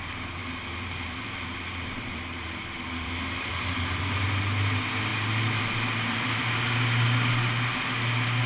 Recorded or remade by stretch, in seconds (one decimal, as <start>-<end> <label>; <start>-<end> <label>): 0.0-0.4 recorded; 0.4-4.0 remade; 4.0-5.1 recorded; 5.1-5.6 remade; 5.6-8.5 recorded